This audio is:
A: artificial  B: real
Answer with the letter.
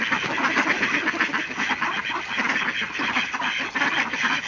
B